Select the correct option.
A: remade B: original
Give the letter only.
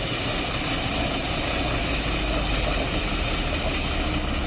B